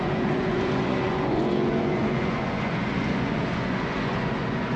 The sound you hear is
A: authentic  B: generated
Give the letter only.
B